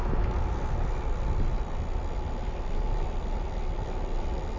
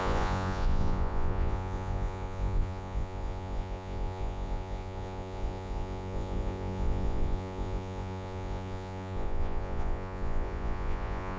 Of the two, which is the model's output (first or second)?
second